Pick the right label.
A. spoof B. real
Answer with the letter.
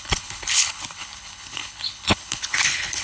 A